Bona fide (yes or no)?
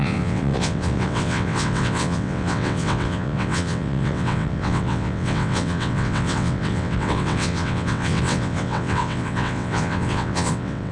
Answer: no